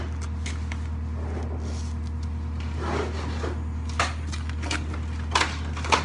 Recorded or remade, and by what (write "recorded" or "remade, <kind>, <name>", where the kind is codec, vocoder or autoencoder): recorded